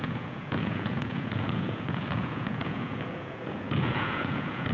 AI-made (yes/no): yes